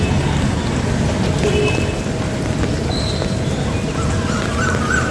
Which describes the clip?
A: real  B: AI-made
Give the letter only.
A